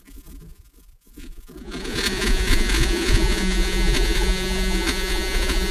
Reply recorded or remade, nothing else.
remade